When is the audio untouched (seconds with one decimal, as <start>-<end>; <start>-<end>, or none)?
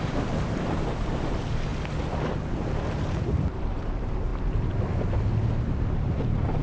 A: 1.7-2.9; 4.3-5.8